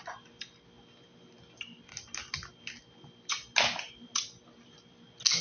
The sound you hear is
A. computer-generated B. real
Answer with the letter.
B